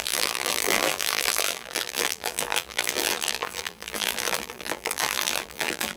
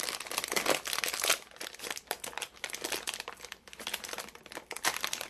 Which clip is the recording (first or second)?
second